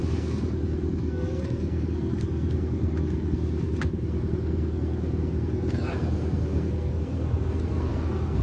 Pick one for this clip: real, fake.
fake